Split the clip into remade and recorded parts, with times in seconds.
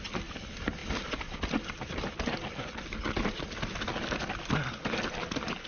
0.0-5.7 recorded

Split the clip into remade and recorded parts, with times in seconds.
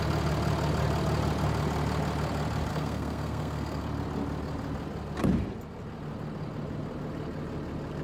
0.0-2.7 recorded; 2.7-3.8 remade; 3.8-8.0 recorded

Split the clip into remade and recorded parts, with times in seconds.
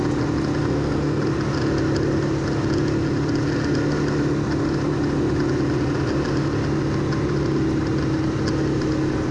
0.0-0.6 recorded; 0.6-1.2 remade; 1.2-9.3 recorded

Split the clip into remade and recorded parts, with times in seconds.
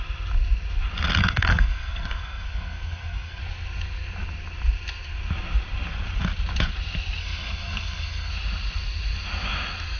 0.0-1.2 recorded; 1.2-3.4 remade; 3.4-7.2 recorded; 7.2-8.3 remade; 8.3-10.0 recorded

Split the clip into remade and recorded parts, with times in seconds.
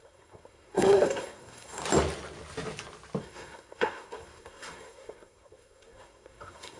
0.0-1.8 remade; 1.8-3.2 recorded; 3.2-6.8 remade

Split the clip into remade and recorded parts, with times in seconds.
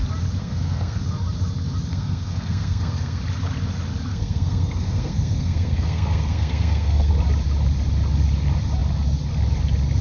0.0-0.4 recorded; 0.4-1.0 remade; 1.0-1.9 recorded; 1.9-3.2 remade; 3.2-4.1 recorded; 4.1-7.1 remade; 7.1-10.0 recorded